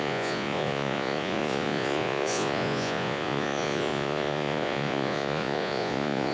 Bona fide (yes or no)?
no